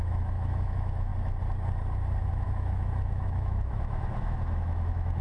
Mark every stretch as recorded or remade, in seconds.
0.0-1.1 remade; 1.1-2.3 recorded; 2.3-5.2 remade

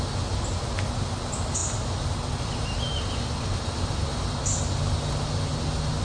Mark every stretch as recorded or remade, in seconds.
0.0-6.0 recorded

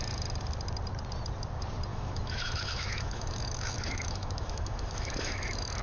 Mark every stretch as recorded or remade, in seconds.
0.0-1.9 recorded; 1.9-5.8 remade

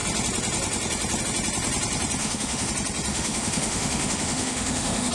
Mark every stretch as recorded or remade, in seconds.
0.0-2.2 recorded; 2.2-2.7 remade; 2.7-3.1 recorded; 3.1-5.1 remade

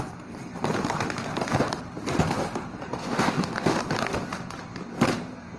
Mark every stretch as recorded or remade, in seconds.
0.0-3.0 recorded; 3.0-3.8 remade; 3.8-5.6 recorded

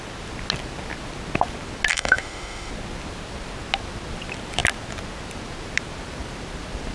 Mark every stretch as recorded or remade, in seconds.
0.0-1.9 recorded; 1.9-2.7 remade; 2.7-6.9 recorded